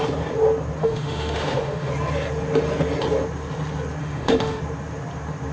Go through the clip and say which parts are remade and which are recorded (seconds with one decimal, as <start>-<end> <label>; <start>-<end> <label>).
0.0-0.8 recorded; 0.8-1.9 remade; 1.9-4.0 recorded; 4.0-4.6 remade; 4.6-5.5 recorded